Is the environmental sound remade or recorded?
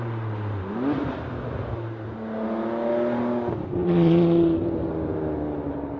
recorded